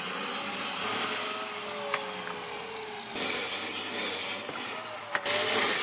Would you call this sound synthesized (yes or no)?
no